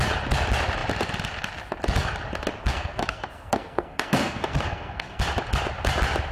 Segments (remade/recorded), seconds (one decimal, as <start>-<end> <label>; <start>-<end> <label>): 0.0-2.7 recorded; 2.7-5.2 remade; 5.2-6.3 recorded